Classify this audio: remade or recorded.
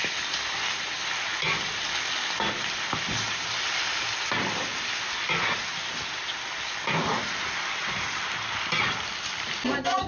recorded